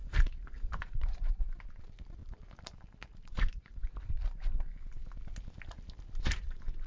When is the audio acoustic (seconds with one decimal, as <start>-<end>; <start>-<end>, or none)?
1.4-2.2; 4.0-6.9